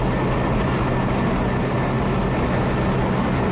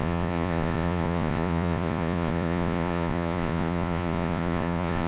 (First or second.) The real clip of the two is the first